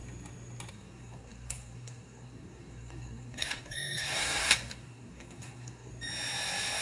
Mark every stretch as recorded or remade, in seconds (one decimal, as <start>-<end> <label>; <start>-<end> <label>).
0.0-0.7 recorded; 0.7-5.9 remade; 5.9-6.8 recorded